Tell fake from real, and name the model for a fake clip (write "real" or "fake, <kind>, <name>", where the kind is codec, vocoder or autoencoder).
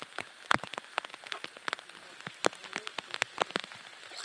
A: real